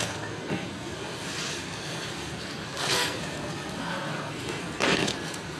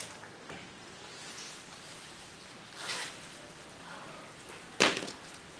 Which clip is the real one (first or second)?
second